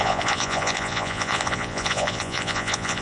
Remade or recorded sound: remade